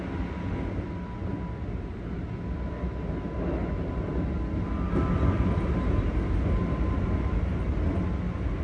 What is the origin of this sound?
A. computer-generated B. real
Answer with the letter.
B